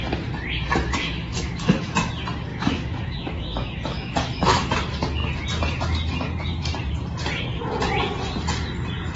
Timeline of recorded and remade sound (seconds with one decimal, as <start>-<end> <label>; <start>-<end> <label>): 0.0-1.0 recorded; 1.0-2.1 remade; 2.1-2.5 recorded; 2.5-4.7 remade; 4.7-9.2 recorded